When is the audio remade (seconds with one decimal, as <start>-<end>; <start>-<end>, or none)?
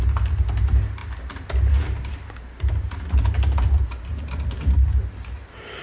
none